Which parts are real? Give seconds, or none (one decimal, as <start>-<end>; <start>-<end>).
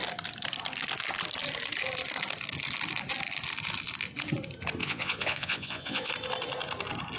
0.0-4.8; 6.1-7.2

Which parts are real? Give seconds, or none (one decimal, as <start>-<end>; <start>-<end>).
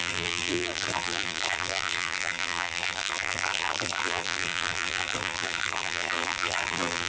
none